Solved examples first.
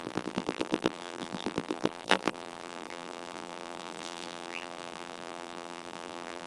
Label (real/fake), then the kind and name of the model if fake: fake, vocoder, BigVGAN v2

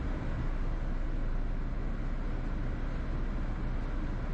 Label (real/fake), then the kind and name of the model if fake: real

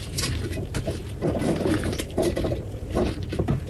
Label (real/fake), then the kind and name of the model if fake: fake, vocoder, BigVGAN v2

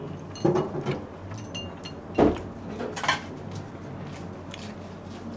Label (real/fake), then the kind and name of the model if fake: real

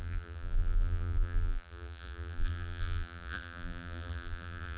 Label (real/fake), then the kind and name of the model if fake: fake, vocoder, BigVGAN v2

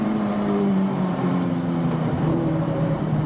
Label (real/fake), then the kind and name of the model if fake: fake, vocoder, BigVGAN v2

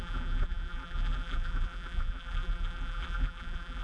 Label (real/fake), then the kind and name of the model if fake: fake, vocoder, BigVGAN v2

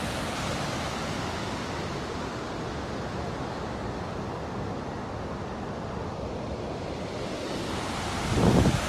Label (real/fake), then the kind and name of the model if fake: real